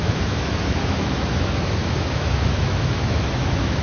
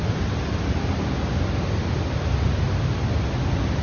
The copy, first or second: first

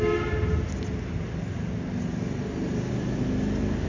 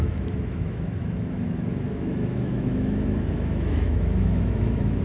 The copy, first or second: second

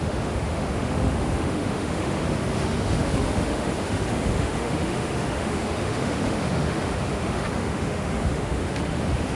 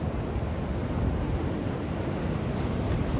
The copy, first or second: first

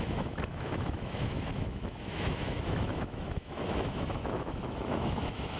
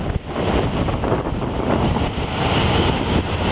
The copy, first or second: first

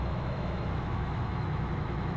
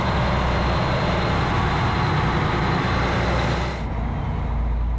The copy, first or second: first